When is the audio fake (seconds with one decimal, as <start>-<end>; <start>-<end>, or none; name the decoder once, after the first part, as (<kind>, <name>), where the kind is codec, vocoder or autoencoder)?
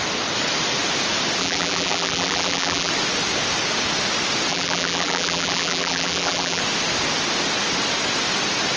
1.4-2.9 (vocoder, BigVGAN v2); 4.5-6.6